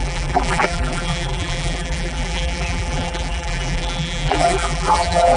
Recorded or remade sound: remade